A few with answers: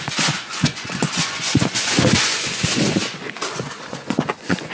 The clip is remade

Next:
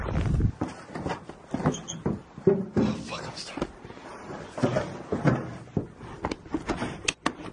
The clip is recorded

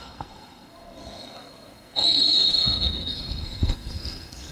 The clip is remade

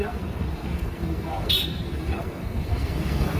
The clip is remade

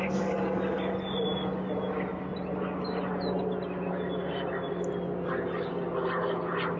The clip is recorded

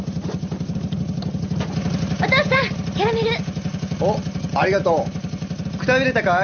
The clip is recorded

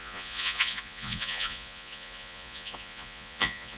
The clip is remade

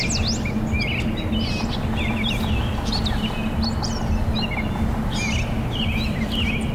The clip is recorded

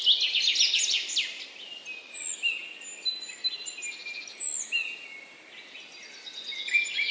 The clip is recorded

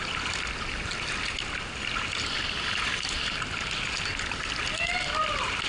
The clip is recorded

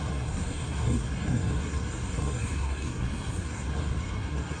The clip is remade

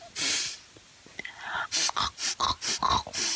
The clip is recorded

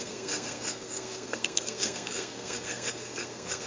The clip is remade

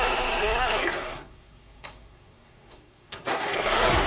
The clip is remade